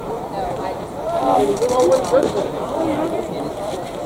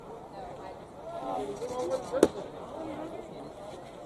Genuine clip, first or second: second